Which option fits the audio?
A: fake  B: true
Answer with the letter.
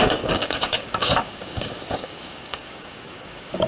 A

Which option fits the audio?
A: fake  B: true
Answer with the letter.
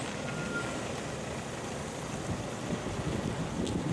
B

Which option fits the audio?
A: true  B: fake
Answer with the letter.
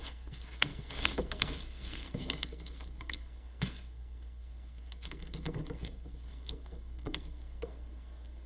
B